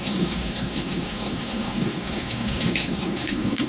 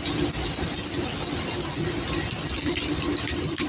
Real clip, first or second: second